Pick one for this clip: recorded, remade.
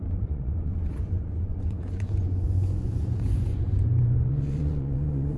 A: remade